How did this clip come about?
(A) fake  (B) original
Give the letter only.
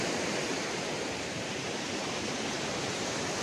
A